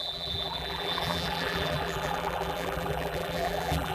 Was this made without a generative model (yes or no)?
no